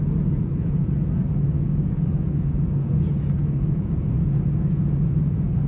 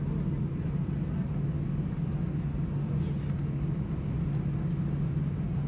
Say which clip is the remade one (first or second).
first